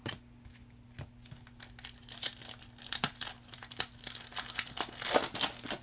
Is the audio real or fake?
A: real